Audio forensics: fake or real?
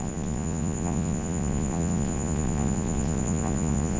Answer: fake